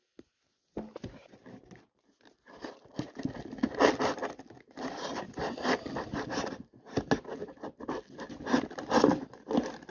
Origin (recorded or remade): recorded